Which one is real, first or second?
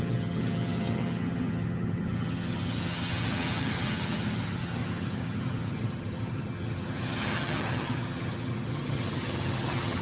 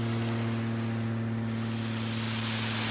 second